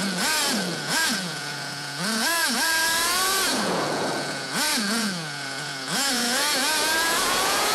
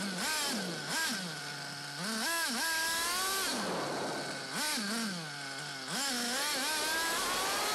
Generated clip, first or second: first